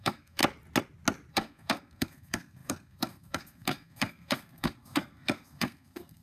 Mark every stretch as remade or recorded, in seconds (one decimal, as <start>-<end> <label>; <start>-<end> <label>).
0.0-0.4 remade; 0.4-1.3 recorded; 1.3-6.2 remade